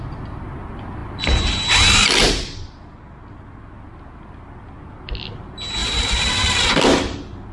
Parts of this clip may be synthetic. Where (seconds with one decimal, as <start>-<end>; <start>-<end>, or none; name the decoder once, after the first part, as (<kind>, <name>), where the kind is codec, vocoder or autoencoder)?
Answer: 1.0-1.6 (vocoder, BigVGAN v2); 5.8-6.3